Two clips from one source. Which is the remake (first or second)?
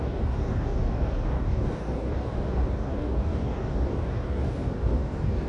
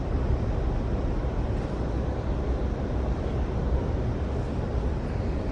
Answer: first